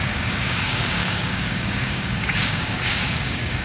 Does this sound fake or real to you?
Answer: fake